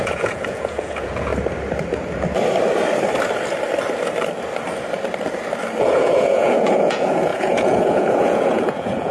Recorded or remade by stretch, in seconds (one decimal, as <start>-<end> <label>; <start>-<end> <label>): 0.0-1.3 remade; 1.3-5.8 recorded; 5.8-9.1 remade